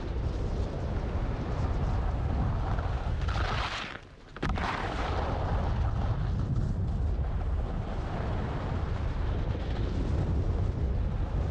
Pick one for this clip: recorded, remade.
recorded